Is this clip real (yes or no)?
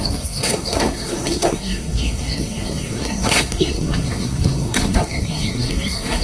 no